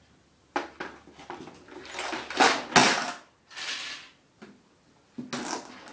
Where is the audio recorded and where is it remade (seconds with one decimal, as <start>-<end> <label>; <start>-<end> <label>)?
0.0-5.9 recorded